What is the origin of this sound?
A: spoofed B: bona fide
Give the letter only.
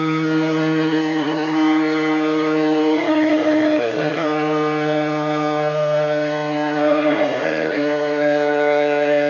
A